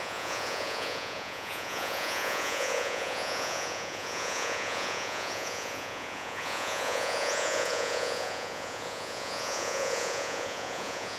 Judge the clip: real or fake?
fake